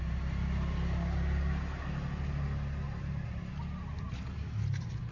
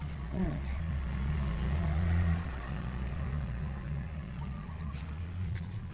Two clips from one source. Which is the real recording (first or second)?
first